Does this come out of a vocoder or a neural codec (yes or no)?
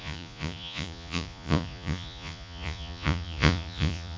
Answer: yes